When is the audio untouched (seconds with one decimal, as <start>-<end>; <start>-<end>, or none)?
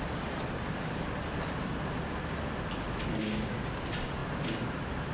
0.0-3.2; 3.8-5.1